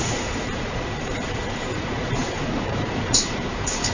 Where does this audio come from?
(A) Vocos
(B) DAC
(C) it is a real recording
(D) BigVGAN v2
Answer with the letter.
A